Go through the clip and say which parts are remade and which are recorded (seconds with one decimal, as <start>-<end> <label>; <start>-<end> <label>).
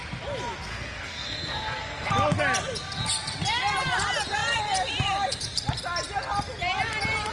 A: 0.0-0.7 recorded; 0.7-2.1 remade; 2.1-7.3 recorded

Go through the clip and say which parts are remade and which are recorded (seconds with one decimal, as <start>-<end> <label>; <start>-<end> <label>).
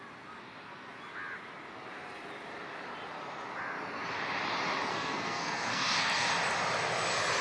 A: 0.0-4.9 recorded; 4.9-6.3 remade; 6.3-7.4 recorded